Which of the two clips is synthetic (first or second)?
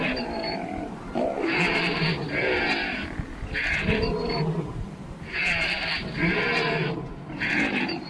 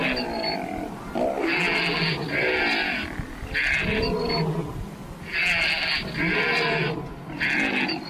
first